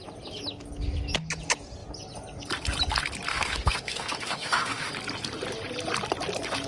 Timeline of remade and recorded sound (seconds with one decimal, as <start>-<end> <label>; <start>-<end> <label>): 0.0-3.3 recorded; 3.3-4.9 remade; 4.9-6.7 recorded